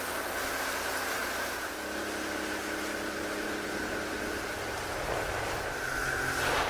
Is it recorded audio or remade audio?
recorded